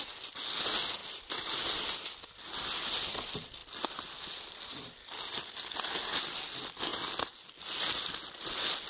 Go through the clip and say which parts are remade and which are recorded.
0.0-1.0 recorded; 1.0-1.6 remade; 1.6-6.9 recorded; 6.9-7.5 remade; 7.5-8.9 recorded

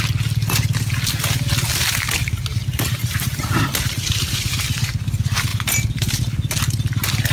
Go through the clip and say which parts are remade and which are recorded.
0.0-2.7 recorded; 2.7-4.3 remade; 4.3-5.5 recorded; 5.5-6.2 remade; 6.2-7.3 recorded

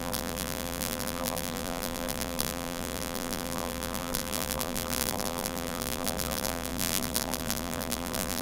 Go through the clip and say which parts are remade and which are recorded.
0.0-8.4 remade

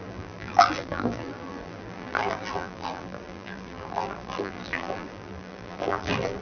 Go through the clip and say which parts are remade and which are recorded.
0.0-6.4 remade

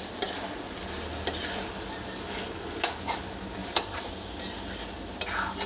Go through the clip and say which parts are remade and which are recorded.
0.0-3.6 recorded; 3.6-4.1 remade; 4.1-5.7 recorded

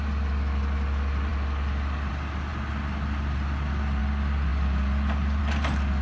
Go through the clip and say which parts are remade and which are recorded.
0.0-6.0 recorded

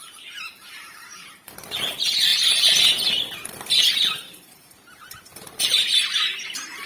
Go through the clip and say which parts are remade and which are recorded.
0.0-2.3 remade; 2.3-2.9 recorded; 2.9-6.9 remade

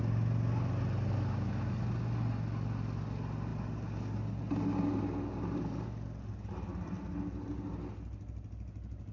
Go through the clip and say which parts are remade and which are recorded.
0.0-9.1 recorded